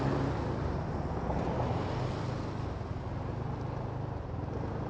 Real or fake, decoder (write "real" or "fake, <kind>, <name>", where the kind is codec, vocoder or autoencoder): real